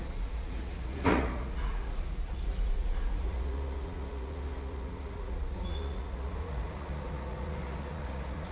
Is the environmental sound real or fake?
fake